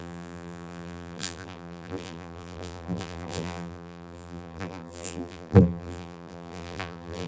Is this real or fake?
fake